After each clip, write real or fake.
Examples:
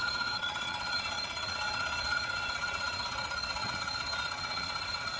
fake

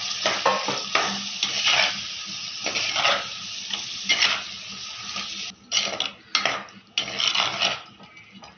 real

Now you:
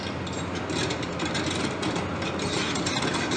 real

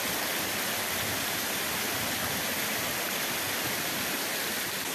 real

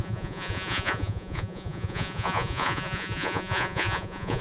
fake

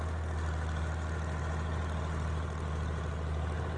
real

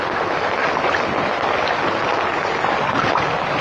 real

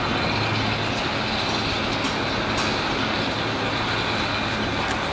real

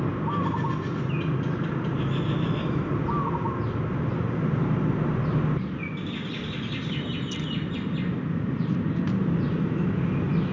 real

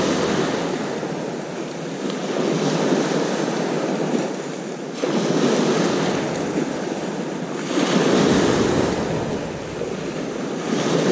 real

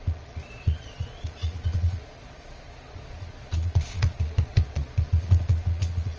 fake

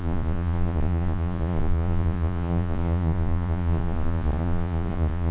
fake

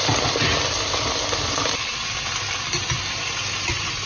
real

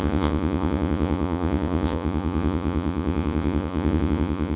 fake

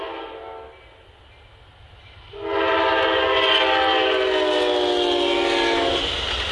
real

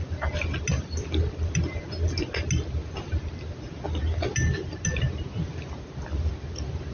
real